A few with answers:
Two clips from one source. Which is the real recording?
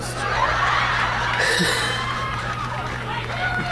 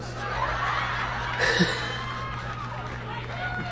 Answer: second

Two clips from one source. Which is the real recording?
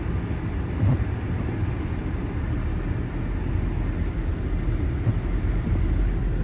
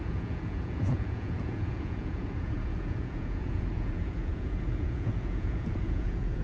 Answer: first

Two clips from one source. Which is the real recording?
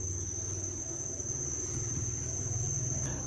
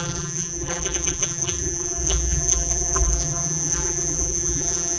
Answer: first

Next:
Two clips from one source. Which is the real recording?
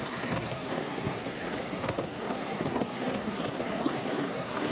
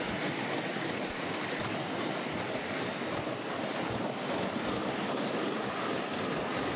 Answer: second